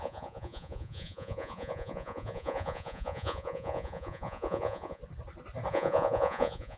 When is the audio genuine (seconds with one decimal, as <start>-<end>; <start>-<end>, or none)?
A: 5.0-5.7

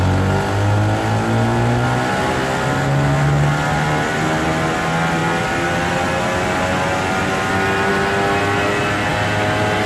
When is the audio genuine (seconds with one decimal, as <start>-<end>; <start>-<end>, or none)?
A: 0.0-9.9